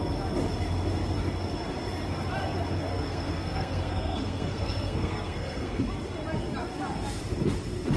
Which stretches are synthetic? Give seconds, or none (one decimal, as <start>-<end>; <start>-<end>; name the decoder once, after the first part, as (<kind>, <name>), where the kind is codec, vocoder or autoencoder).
2.9-5.8 (codec, SNAC)